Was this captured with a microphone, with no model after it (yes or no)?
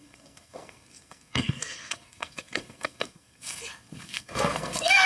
no